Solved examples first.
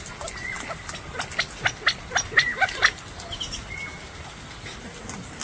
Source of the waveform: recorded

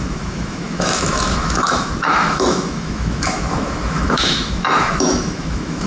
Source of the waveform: remade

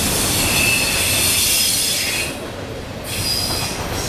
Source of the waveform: recorded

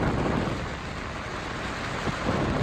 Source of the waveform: recorded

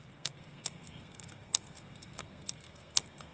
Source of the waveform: remade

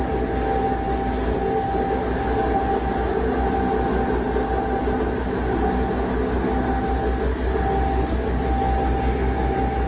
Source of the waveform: recorded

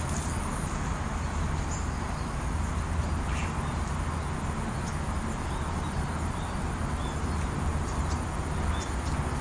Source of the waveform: recorded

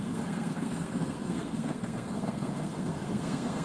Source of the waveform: remade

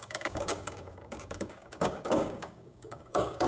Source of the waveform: remade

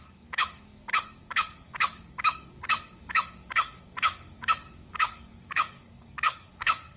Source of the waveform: remade